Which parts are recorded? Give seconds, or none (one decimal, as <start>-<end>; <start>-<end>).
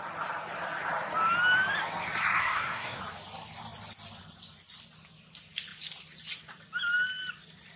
0.0-2.4; 3.0-7.8